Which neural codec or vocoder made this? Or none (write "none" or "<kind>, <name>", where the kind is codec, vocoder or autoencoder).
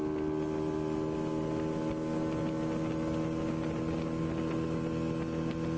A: none